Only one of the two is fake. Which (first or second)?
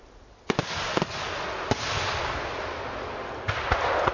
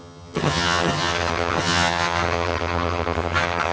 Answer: second